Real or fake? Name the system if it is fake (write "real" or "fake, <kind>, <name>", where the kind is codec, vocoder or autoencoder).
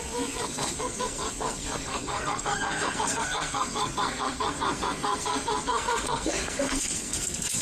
fake, codec, SNAC